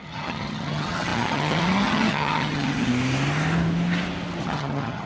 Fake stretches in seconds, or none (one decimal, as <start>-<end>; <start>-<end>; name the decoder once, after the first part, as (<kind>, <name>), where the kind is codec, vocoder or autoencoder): 0.0-2.9 (vocoder, HiFi-GAN); 4.4-5.1

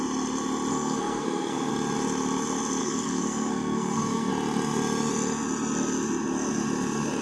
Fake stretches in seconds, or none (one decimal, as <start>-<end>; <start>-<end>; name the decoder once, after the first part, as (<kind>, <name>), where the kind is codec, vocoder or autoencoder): 0.7-1.7 (codec, SNAC); 2.8-4.3